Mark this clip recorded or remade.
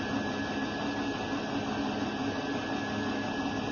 recorded